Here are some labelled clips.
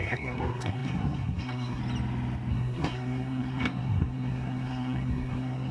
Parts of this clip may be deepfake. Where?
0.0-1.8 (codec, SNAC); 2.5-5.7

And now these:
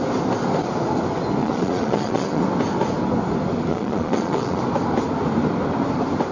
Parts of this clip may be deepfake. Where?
1.4-2.4 (vocoder, Vocos); 3.7-4.6

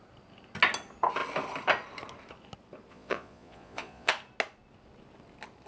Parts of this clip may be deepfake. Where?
2.9-4.1 (vocoder, Vocos)